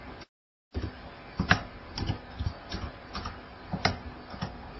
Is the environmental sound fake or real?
real